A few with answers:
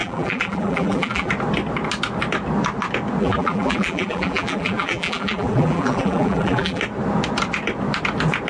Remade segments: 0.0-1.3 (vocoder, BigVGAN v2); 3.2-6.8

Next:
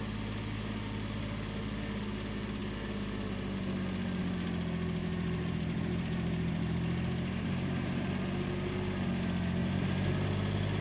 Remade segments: 5.0-8.1 (vocoder, BigVGAN v2); 9.6-10.1